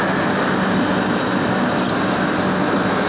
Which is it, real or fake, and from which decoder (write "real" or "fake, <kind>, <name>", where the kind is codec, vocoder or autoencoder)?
real